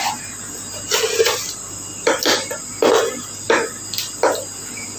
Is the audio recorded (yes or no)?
yes